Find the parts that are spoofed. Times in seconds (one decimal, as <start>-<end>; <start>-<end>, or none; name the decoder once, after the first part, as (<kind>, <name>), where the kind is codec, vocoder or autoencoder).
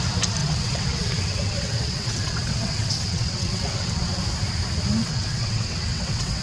0.4-4.2 (vocoder, WaveNeXt); 5.0-6.4